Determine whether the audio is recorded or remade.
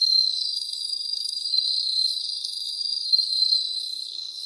remade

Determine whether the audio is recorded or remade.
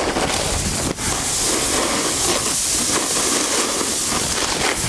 recorded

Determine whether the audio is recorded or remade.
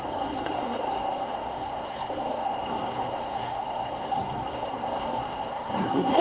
remade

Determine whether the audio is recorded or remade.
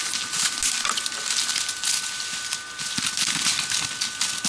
recorded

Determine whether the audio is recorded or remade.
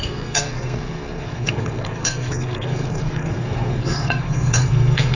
remade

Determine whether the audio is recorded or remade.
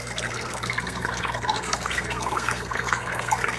remade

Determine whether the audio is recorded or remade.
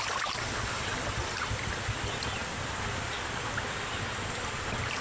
recorded